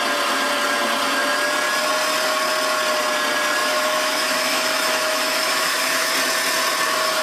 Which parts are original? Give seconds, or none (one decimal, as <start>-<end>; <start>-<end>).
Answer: 0.0-3.6; 6.1-7.2